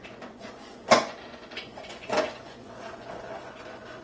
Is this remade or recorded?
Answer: remade